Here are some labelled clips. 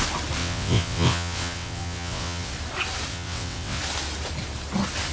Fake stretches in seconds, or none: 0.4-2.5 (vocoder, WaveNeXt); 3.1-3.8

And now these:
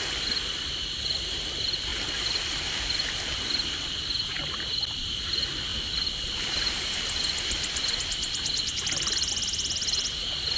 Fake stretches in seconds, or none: 1.9-4.0 (vocoder, BigVGAN v2); 5.7-9.3

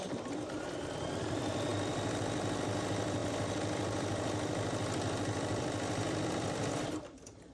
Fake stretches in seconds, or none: 3.2-7.5 (vocoder, BigVGAN v2)

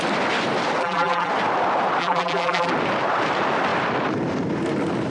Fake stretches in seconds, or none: 0.8-1.3 (vocoder, BigVGAN v2); 2.0-2.7